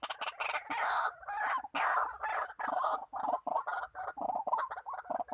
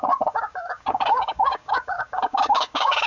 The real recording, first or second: first